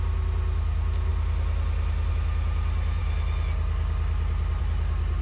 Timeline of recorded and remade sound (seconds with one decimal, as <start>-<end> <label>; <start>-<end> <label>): 0.0-5.2 recorded